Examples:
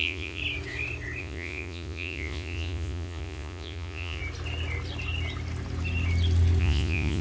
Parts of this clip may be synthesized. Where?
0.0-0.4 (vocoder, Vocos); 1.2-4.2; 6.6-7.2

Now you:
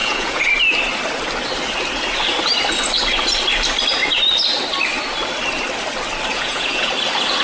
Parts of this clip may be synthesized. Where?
0.0-0.5 (vocoder, Vocos); 6.3-6.9

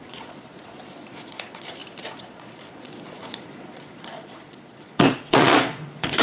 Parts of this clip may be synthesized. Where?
0.0-6.2 (vocoder, Vocos)

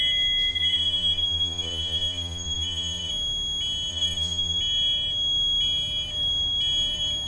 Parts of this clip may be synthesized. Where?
0.5-3.1 (vocoder, Vocos); 3.9-4.6

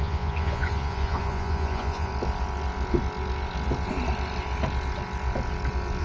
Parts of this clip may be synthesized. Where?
0.0-2.1 (vocoder, Vocos)

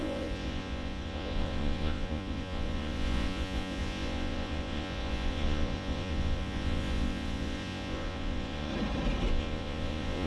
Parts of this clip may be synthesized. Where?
0.0-8.7 (vocoder, Vocos); 9.3-10.3